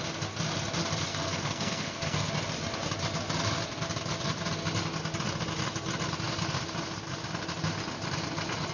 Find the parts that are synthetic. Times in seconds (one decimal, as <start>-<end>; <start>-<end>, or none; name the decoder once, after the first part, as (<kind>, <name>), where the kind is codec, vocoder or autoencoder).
1.1-2.3 (codec, SNAC)